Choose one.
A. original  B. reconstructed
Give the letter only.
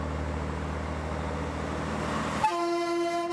A